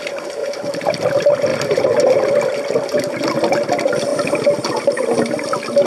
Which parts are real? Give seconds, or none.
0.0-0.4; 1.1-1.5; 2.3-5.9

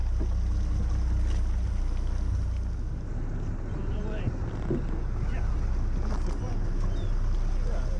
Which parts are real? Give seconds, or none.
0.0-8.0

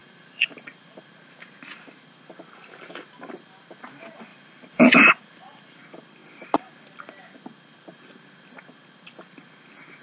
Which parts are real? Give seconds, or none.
1.1-4.3; 5.8-10.0

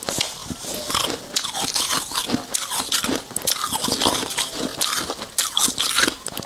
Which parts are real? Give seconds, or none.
0.4-4.3; 4.7-6.5

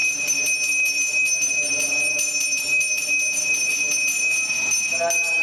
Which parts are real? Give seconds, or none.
0.0-5.4